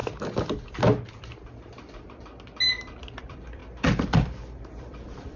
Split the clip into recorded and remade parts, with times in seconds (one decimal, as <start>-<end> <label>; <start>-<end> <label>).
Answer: 0.0-3.2 recorded; 3.2-5.4 remade

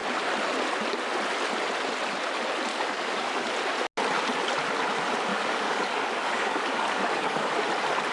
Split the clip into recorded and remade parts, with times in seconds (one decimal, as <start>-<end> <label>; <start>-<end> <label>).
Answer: 0.0-2.7 recorded; 2.7-3.5 remade; 3.5-5.3 recorded; 5.3-7.5 remade; 7.5-8.1 recorded

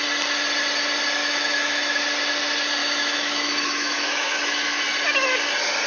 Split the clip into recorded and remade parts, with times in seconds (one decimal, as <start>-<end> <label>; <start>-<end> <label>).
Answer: 0.0-1.2 recorded; 1.2-2.0 remade; 2.0-2.8 recorded; 2.8-4.8 remade; 4.8-5.9 recorded

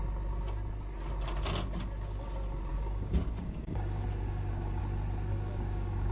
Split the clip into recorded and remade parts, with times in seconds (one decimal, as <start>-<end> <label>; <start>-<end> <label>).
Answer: 0.0-2.7 recorded; 2.7-4.8 remade; 4.8-5.3 recorded; 5.3-6.1 remade

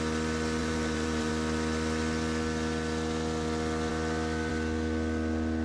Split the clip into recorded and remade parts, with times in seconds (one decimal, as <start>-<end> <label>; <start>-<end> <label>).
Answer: 0.0-0.6 recorded; 0.6-1.3 remade; 1.3-5.6 recorded

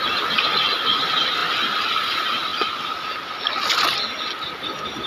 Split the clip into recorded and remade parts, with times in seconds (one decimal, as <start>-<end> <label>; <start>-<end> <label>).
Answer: 0.0-2.5 remade; 2.5-5.1 recorded

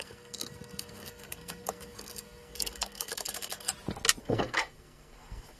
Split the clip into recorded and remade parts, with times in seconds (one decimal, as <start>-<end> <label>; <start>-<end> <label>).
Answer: 0.0-3.7 remade; 3.7-4.2 recorded; 4.2-5.6 remade

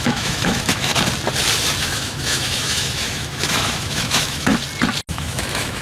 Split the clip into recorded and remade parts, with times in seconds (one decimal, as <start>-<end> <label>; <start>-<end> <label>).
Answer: 0.0-0.9 remade; 0.9-1.8 recorded; 1.8-4.5 remade; 4.5-5.1 recorded; 5.1-5.8 remade